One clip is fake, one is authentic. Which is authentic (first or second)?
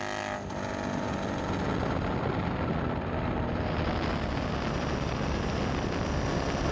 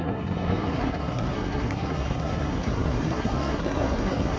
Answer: first